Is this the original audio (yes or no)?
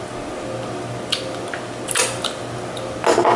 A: yes